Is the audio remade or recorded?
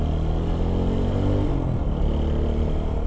recorded